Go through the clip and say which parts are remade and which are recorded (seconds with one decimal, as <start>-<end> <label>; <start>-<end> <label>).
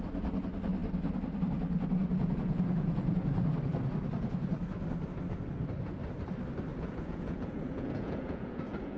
0.0-2.0 recorded; 2.0-3.2 remade; 3.2-6.7 recorded; 6.7-9.0 remade